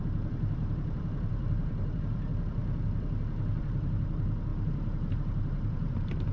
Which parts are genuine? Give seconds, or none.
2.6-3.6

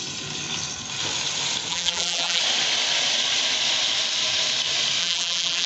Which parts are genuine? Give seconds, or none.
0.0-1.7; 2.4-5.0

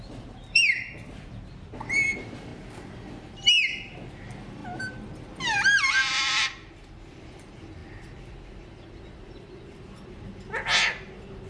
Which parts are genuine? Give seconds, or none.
2.5-4.1

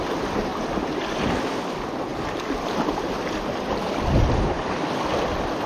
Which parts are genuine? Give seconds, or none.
0.0-2.1; 4.8-5.7

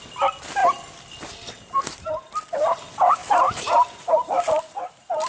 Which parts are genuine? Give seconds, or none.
0.0-0.6; 1.8-3.2; 4.6-5.3